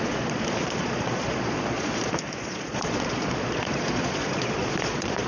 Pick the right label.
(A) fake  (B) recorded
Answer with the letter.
A